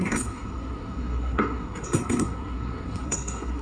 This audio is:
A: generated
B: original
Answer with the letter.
A